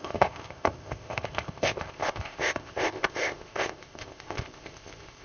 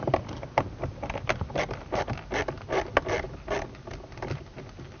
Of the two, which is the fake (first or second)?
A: first